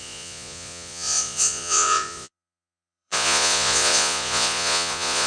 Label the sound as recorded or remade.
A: remade